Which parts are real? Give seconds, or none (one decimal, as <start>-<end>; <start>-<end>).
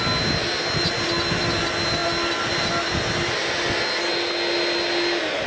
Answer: 0.0-5.5